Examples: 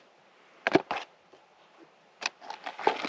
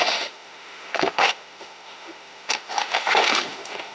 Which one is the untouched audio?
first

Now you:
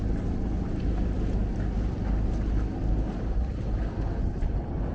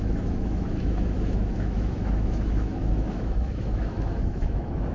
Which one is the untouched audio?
first